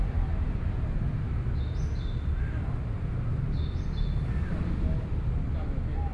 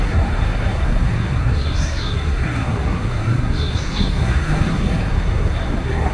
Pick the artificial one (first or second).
second